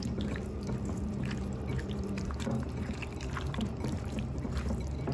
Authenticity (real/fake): fake